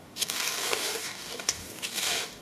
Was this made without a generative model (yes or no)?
no